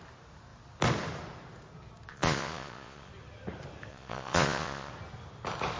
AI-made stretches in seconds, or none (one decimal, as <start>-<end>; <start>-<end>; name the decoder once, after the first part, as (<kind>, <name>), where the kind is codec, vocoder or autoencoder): 2.1-3.1 (vocoder, Vocos); 3.9-4.9